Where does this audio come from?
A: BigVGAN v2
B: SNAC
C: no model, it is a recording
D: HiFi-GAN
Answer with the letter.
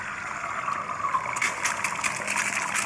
C